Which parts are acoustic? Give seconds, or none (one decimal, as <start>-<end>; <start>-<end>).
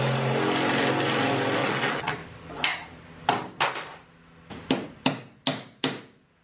0.0-1.6; 2.1-6.4